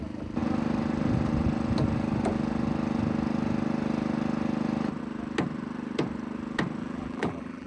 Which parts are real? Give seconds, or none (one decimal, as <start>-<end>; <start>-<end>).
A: 0.0-6.8